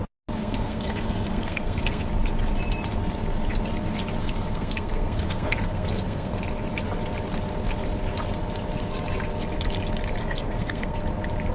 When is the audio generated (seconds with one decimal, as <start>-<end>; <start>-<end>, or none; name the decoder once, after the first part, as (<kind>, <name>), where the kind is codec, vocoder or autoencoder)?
0.4-2.1 (codec, SNAC); 4.2-6.4; 10.2-11.0